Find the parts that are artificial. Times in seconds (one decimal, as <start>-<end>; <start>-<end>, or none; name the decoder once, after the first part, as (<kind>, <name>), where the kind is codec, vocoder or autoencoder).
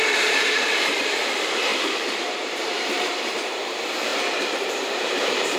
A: 0.0-5.6 (vocoder, BigVGAN v2)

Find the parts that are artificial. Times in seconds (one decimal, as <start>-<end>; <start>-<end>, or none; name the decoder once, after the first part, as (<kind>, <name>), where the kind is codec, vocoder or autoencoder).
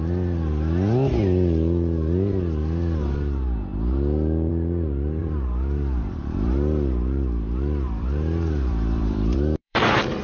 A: 5.2-10.2 (vocoder, BigVGAN v2)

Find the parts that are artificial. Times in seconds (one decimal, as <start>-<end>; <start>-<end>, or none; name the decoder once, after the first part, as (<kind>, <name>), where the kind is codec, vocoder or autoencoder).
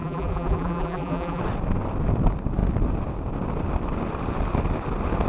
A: 0.0-1.4 (vocoder, BigVGAN v2)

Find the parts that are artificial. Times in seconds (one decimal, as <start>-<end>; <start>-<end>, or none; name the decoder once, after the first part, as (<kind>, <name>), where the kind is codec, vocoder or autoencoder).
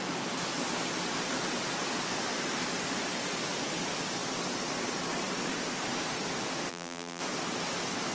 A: 6.7-7.2 (vocoder, BigVGAN v2)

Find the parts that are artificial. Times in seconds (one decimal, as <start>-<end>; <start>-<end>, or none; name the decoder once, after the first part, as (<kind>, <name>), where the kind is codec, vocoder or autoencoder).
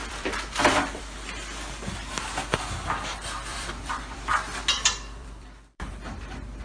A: 0.0-1.0 (vocoder, BigVGAN v2); 3.5-4.3; 5.2-5.9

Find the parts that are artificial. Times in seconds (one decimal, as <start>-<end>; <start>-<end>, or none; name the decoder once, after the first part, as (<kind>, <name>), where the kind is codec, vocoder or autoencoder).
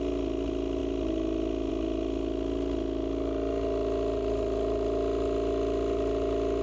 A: none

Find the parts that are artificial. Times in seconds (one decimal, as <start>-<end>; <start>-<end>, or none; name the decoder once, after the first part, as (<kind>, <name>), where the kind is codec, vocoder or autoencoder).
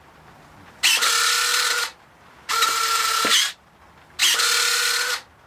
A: 1.5-3.0 (vocoder, BigVGAN v2)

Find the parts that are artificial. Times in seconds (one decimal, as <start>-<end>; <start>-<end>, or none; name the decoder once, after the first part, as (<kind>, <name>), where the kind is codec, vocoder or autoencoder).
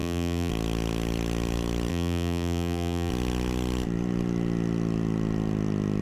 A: 0.0-0.5 (vocoder, BigVGAN v2); 1.9-3.1